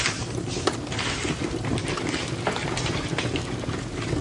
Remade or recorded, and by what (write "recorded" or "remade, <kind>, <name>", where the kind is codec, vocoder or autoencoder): recorded